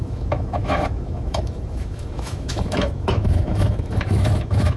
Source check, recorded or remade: remade